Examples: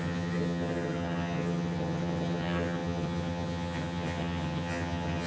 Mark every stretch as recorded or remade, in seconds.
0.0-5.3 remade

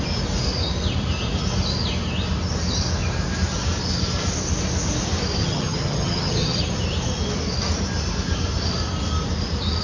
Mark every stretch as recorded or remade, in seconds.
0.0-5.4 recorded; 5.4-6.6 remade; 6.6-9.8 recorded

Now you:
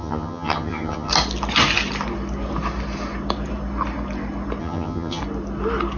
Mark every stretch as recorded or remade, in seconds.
0.0-1.1 remade; 1.1-4.6 recorded; 4.6-5.2 remade; 5.2-6.0 recorded

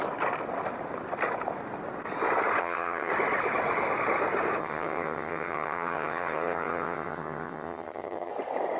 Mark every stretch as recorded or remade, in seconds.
0.0-2.6 recorded; 2.6-3.1 remade; 3.1-4.6 recorded; 4.6-8.3 remade; 8.3-8.8 recorded

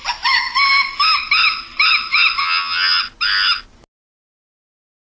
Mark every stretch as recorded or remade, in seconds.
0.0-2.4 recorded; 2.4-3.0 remade; 3.0-5.1 recorded

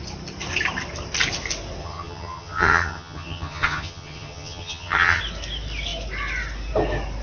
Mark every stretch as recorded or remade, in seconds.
0.0-1.8 recorded; 1.8-5.2 remade; 5.2-7.2 recorded